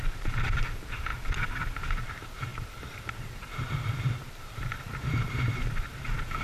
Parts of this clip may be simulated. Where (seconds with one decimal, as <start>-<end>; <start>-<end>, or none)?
0.0-1.1; 1.8-6.4